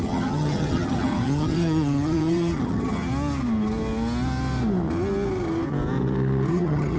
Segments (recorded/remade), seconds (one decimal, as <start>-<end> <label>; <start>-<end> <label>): 0.0-3.1 remade; 3.1-6.5 recorded; 6.5-7.0 remade